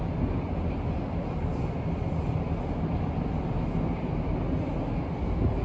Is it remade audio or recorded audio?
recorded